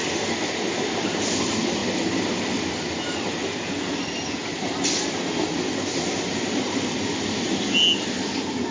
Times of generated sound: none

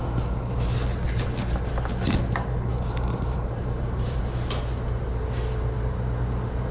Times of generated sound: 2.7-4.2 (vocoder, BigVGAN v2)